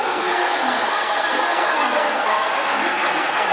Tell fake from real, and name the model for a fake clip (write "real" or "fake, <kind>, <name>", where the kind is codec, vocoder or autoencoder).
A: fake, codec, SNAC